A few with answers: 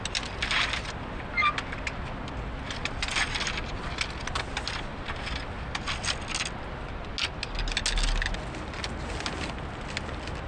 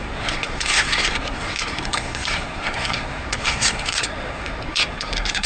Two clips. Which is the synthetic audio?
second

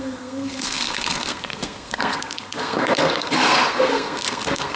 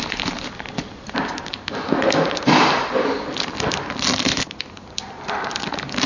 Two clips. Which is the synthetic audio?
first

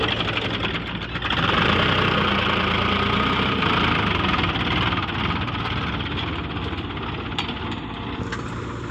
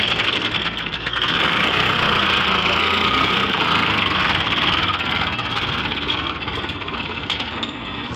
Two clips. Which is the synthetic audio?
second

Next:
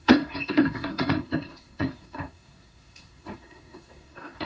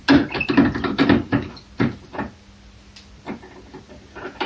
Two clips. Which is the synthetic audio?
first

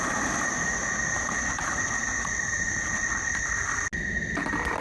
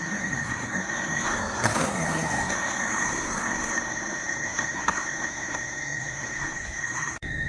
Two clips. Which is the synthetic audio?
second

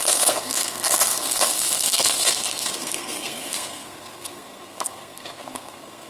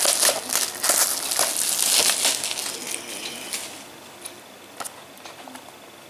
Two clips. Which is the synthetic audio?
first